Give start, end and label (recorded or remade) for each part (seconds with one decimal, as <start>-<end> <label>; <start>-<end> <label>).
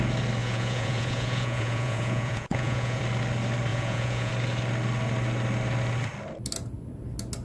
0.0-0.4 recorded; 0.4-3.0 remade; 3.0-3.7 recorded; 3.7-4.3 remade; 4.3-7.4 recorded